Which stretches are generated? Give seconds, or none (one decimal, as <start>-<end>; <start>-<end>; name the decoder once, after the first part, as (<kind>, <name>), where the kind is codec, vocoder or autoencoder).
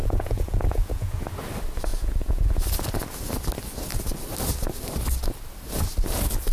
0.0-1.2 (vocoder, Vocos); 1.9-2.5